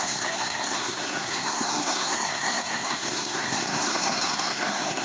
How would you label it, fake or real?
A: fake